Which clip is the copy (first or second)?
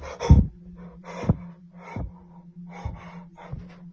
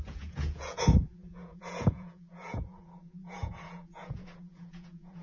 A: second